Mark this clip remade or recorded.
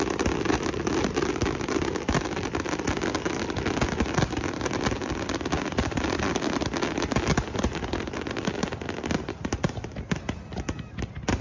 recorded